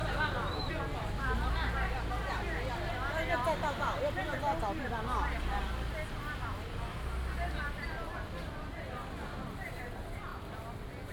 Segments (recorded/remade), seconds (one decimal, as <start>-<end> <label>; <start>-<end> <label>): 0.0-0.7 remade; 0.7-11.1 recorded